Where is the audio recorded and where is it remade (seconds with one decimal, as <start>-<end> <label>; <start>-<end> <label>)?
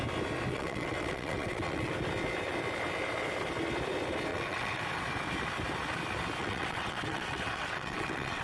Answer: 0.0-0.5 recorded; 0.5-1.9 remade; 1.9-4.3 recorded; 4.3-4.8 remade; 4.8-6.4 recorded; 6.4-8.4 remade